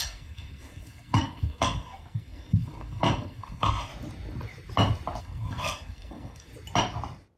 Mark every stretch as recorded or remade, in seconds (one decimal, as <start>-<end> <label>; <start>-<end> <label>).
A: 0.0-3.9 remade; 3.9-5.2 recorded; 5.2-6.5 remade; 6.5-7.4 recorded